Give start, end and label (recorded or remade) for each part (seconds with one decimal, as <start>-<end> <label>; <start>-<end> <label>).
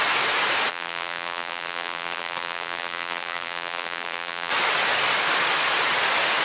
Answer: 0.0-0.7 recorded; 0.7-4.5 remade; 4.5-6.4 recorded